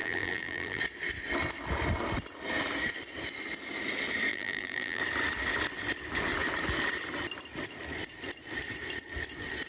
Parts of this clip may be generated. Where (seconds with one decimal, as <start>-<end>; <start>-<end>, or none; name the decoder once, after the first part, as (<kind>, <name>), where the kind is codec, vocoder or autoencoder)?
0.0-0.8 (vocoder, BigVGAN v2); 4.3-5.0